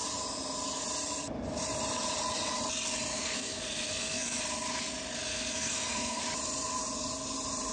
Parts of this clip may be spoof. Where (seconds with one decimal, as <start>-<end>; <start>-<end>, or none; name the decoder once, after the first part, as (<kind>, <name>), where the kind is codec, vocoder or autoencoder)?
3.1-4.4 (codec, SNAC); 5.3-6.2